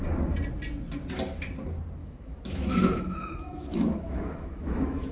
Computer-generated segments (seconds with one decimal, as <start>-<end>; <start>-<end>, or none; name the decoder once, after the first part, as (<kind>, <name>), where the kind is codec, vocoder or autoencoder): 2.0-5.1 (autoencoder, DAC-VAE)